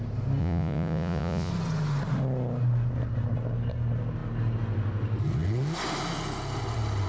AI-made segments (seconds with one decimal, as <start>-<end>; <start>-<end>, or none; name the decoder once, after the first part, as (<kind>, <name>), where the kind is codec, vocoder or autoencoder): 0.4-1.5 (vocoder, Vocos)